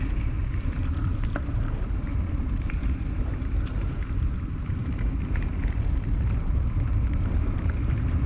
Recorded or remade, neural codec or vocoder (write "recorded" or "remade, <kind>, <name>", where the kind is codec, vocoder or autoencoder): remade, vocoder, BigVGAN v2